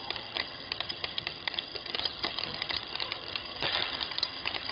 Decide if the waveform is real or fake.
fake